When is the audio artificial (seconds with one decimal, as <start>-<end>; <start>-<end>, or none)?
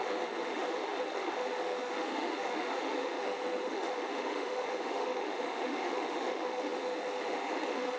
0.0-8.0